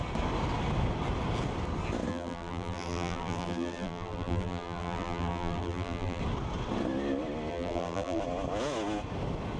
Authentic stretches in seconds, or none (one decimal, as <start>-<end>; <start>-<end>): 0.0-2.1; 6.2-7.5; 8.2-9.6